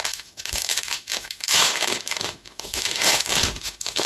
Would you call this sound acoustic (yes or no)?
no